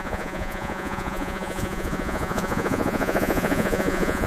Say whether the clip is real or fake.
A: fake